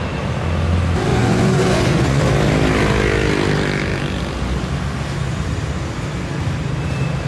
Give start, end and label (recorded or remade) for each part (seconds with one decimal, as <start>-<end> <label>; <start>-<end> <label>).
0.0-1.1 recorded; 1.1-2.2 remade; 2.2-7.3 recorded